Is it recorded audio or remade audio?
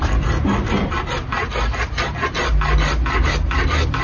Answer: recorded